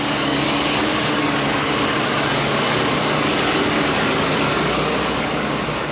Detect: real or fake fake